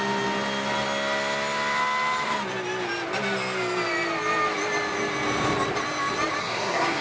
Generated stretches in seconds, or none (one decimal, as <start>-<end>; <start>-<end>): 6.4-7.0